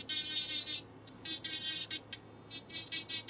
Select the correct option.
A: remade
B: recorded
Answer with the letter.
B